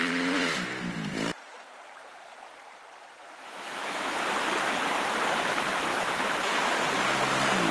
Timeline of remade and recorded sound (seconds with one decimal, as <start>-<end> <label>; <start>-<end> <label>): 0.0-3.2 recorded; 3.2-4.0 remade; 4.0-5.9 recorded; 5.9-6.6 remade; 6.6-7.7 recorded